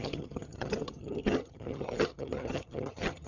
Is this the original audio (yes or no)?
no